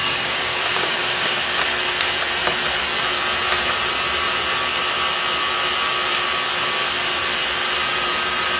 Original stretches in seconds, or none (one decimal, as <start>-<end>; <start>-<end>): 1.6-8.6